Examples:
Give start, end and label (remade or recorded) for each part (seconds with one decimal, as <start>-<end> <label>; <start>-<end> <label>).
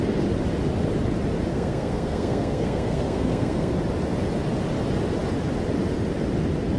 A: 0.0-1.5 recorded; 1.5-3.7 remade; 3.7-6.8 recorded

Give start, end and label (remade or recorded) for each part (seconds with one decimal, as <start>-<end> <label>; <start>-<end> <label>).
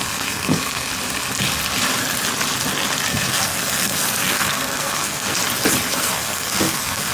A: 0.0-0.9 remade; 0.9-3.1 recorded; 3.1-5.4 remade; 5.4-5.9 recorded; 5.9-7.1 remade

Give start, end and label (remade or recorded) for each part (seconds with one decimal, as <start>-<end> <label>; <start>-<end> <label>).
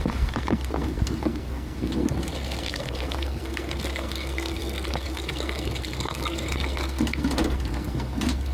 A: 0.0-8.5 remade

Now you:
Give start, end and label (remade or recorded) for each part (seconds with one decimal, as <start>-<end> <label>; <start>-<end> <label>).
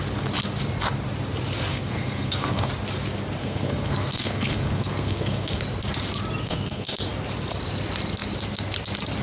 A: 0.0-1.7 recorded; 1.7-2.7 remade; 2.7-3.4 recorded; 3.4-5.6 remade; 5.6-6.4 recorded; 6.4-7.0 remade; 7.0-9.2 recorded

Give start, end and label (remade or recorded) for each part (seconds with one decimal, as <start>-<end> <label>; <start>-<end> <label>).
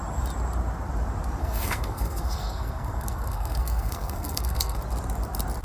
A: 0.0-1.4 recorded; 1.4-4.8 remade; 4.8-5.6 recorded